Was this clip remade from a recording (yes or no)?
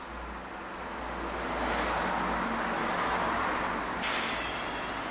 no